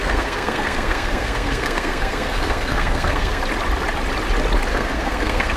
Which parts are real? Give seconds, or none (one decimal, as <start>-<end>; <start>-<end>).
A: 3.4-4.7